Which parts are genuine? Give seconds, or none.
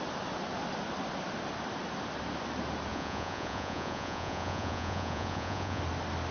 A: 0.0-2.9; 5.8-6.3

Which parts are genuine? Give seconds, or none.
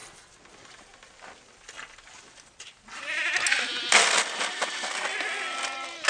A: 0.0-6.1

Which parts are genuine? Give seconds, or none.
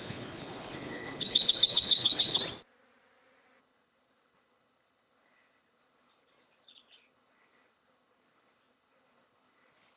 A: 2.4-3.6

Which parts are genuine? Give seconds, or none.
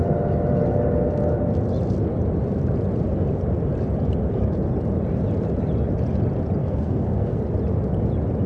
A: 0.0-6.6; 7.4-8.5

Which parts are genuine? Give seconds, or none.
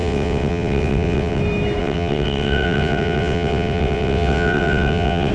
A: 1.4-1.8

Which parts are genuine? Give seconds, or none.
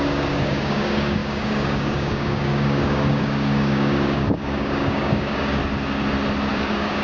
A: 5.6-6.5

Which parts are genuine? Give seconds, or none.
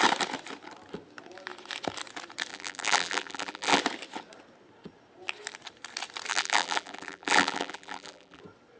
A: 0.0-2.5; 3.8-6.3; 8.4-8.8